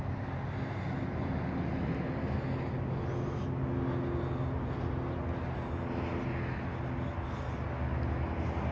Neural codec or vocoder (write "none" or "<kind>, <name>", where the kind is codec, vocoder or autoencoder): none